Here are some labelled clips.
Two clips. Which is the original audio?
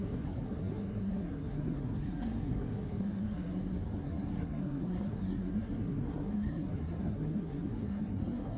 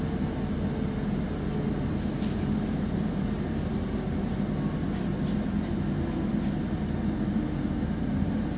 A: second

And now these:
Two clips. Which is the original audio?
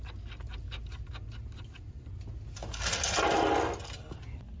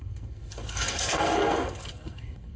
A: first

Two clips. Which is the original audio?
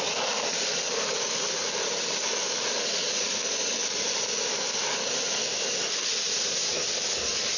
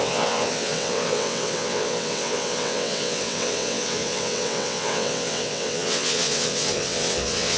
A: first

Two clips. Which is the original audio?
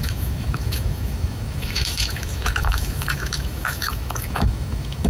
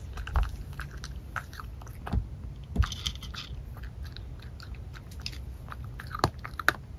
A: second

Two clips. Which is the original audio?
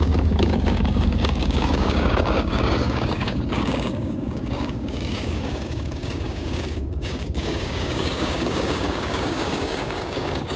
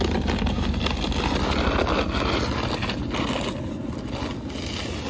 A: second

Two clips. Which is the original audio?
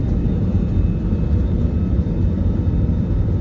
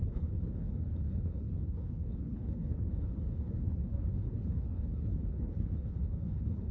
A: first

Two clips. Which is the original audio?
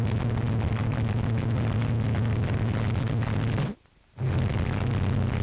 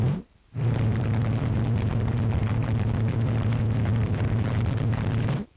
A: first